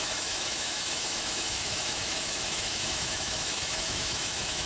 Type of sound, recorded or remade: remade